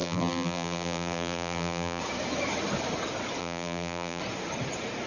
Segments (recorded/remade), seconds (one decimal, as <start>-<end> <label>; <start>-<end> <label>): 0.0-2.0 remade; 2.0-3.4 recorded; 3.4-4.2 remade; 4.2-5.1 recorded